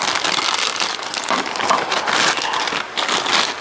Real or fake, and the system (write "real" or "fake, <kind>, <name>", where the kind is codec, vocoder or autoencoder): real